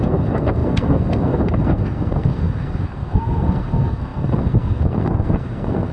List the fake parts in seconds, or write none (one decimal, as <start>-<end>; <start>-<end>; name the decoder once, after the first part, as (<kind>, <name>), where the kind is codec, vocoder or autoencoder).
0.0-5.9 (codec, SNAC)